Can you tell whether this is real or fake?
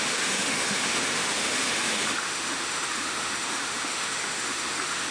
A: fake